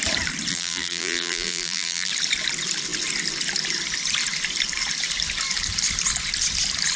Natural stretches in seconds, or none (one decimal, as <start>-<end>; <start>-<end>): 0.0-0.5; 2.1-7.0